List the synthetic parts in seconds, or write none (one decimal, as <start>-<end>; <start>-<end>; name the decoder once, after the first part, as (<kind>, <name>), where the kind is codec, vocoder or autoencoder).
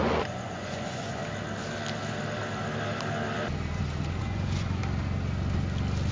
0.0-1.2 (vocoder, Vocos); 4.2-4.8